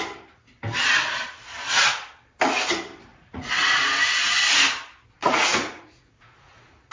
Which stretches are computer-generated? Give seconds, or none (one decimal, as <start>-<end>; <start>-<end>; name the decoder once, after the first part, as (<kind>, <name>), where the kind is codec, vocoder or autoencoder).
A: 3.1-3.8 (vocoder, Vocos); 5.2-6.9